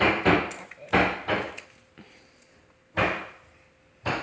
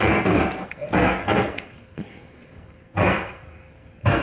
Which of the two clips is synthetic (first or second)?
second